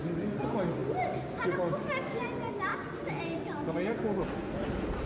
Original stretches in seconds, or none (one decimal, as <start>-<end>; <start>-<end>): 0.0-5.1